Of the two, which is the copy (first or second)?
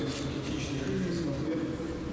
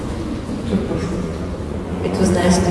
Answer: second